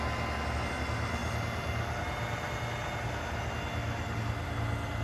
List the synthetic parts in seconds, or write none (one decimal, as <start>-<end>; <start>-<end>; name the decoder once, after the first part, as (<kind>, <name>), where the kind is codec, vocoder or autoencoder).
none